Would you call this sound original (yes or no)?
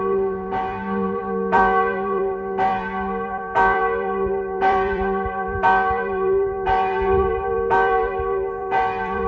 no